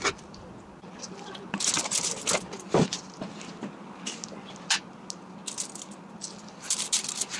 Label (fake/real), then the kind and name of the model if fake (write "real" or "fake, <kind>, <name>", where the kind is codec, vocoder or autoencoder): real